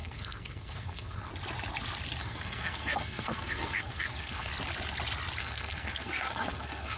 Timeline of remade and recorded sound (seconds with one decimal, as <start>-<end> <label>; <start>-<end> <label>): 0.0-1.3 remade; 1.3-2.2 recorded; 2.2-4.5 remade; 4.5-5.4 recorded; 5.4-7.0 remade